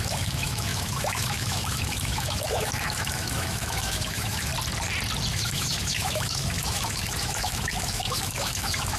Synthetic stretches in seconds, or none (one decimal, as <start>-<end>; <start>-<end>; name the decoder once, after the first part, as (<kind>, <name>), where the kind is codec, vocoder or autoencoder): 0.0-4.5 (autoencoder, DAC-VAE); 5.3-9.0